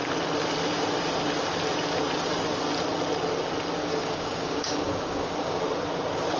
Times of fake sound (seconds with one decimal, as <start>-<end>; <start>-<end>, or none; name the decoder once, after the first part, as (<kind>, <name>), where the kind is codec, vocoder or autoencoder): 3.8-5.6 (codec, DAC)